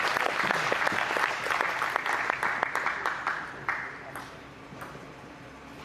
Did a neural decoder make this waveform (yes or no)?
no